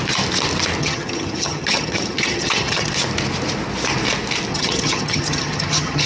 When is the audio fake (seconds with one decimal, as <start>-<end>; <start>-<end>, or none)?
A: 0.8-2.9; 4.5-6.1